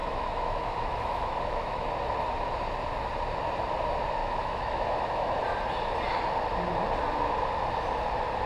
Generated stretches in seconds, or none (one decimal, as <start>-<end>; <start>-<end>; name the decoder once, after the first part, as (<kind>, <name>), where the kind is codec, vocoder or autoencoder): 0.0-1.8 (autoencoder, DAC-VAE); 4.2-5.4